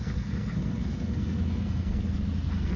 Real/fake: fake